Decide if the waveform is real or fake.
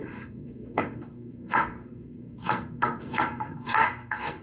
fake